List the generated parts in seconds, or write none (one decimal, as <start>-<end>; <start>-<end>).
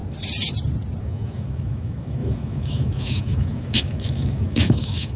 1.0-5.2